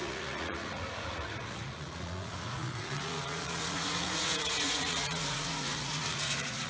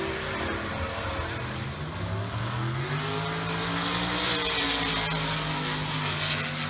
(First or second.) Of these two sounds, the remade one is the first